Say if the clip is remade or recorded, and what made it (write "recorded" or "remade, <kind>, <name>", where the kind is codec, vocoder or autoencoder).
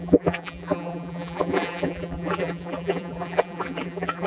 remade, vocoder, BigVGAN v2